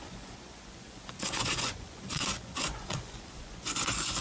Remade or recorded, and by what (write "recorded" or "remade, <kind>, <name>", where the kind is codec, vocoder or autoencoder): remade, vocoder, Vocos